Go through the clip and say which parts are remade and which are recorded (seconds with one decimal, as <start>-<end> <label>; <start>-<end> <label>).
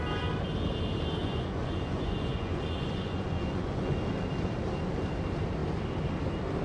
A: 0.0-1.2 recorded; 1.2-4.0 remade; 4.0-6.6 recorded